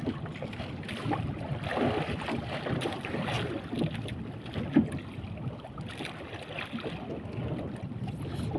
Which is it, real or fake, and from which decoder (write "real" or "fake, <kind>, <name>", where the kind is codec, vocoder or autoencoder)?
real